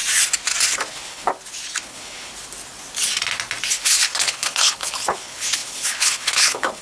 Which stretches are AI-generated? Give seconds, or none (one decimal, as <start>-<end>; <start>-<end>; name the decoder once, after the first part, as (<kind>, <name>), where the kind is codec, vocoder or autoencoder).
0.9-1.3 (codec, HILCodec); 1.8-2.3; 3.7-6.8